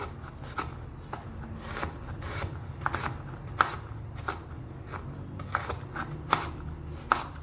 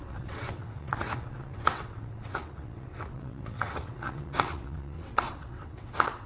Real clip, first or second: first